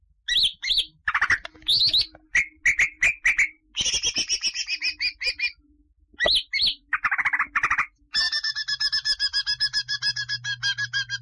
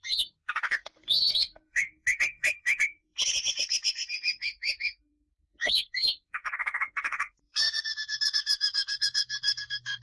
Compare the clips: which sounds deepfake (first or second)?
second